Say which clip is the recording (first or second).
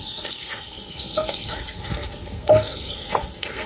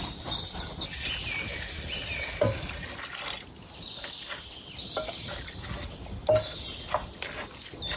second